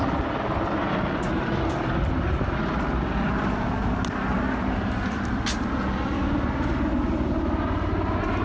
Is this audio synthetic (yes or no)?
no